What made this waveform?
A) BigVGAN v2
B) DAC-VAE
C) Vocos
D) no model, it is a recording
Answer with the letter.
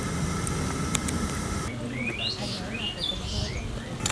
D